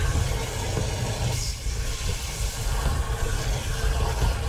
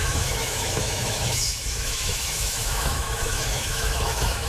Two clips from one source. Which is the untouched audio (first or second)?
first